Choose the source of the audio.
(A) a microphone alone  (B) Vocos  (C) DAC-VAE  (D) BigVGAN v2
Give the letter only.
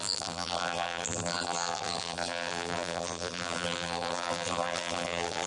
D